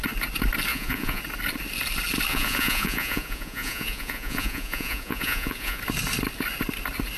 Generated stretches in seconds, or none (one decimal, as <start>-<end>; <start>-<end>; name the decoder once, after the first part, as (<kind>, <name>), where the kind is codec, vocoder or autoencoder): 0.7-1.2 (vocoder, Vocos); 2.3-5.8